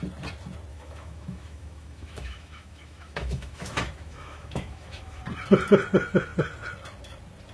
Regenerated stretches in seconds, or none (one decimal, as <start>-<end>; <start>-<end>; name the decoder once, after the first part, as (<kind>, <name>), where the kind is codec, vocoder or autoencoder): 0.7-5.2 (autoencoder, DAC-VAE)